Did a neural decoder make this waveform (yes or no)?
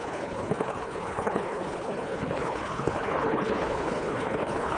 yes